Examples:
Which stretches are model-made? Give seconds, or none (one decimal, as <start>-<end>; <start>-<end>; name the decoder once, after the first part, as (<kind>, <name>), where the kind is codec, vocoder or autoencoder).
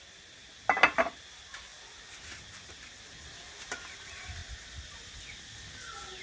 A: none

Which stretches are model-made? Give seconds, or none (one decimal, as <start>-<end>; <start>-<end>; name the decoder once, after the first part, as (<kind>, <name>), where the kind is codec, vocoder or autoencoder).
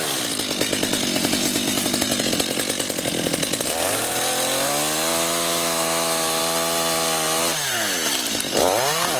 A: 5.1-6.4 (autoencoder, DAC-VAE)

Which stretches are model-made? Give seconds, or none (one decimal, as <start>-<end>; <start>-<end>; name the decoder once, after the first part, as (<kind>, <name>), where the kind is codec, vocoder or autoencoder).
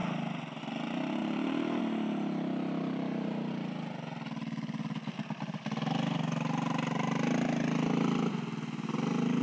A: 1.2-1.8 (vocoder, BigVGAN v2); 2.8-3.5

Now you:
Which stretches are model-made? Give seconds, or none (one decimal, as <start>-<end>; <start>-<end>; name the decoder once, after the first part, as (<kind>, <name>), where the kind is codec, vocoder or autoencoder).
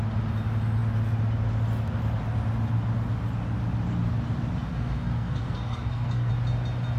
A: 4.7-6.3 (codec, SNAC)